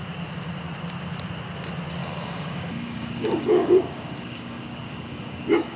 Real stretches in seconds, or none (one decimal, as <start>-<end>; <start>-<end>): 0.0-2.0